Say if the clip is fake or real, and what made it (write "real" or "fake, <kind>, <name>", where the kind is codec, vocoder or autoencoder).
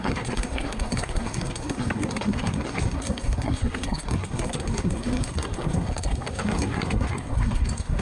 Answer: fake, codec, SNAC